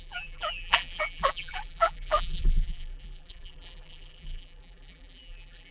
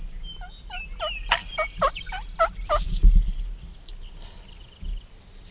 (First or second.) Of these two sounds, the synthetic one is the first